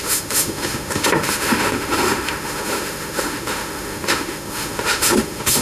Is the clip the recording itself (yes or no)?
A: no